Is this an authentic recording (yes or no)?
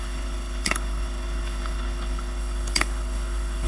no